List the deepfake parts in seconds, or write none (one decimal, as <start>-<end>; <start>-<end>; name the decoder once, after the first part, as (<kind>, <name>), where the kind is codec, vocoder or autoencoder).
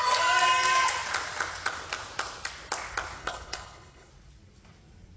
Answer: 3.2-4.1 (codec, HILCodec)